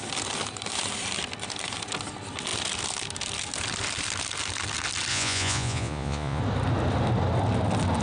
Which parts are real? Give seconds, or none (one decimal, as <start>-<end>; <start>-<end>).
0.0-5.1; 6.4-8.0